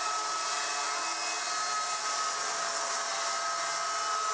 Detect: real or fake real